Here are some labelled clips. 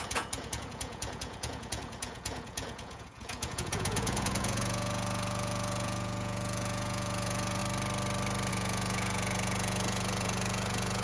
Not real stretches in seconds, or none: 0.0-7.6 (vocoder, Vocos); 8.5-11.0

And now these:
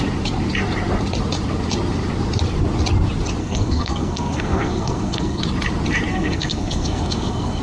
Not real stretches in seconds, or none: 3.4-5.4 (codec, SNAC); 6.1-7.6

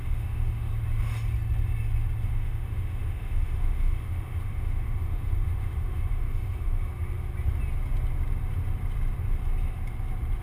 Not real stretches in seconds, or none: 0.0-0.7 (autoencoder, DAC-VAE); 2.3-6.9